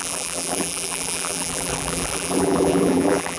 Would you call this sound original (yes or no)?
no